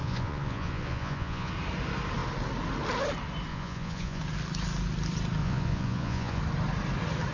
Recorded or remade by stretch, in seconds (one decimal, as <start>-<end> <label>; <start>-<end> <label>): 0.0-1.5 remade; 1.5-3.5 recorded; 3.5-4.2 remade; 4.2-5.4 recorded; 5.4-6.4 remade; 6.4-7.3 recorded